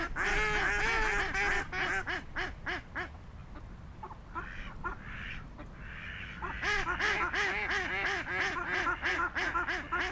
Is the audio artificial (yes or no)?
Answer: no